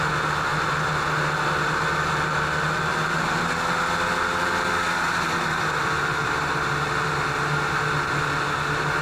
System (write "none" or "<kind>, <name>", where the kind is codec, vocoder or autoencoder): none